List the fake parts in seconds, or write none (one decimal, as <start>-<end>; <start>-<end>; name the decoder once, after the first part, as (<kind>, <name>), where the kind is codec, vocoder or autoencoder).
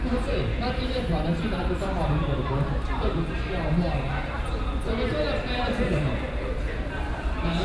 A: 0.0-7.6 (vocoder, BigVGAN v2)